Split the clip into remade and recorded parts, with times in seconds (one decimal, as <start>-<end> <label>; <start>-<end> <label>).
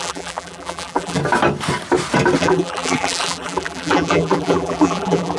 0.0-1.2 remade; 1.2-2.4 recorded; 2.4-5.4 remade